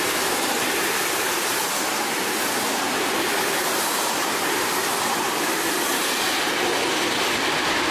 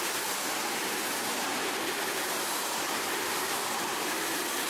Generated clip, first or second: second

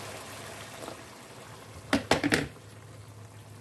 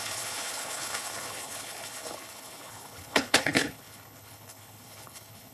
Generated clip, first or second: second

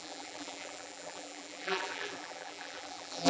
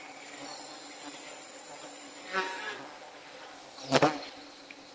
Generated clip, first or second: first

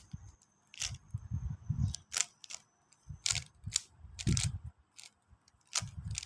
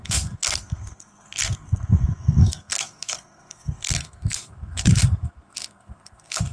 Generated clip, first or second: second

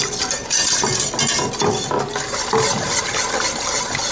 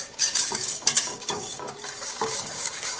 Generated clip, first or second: second